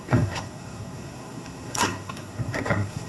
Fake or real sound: fake